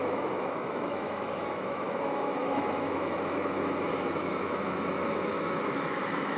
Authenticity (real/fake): fake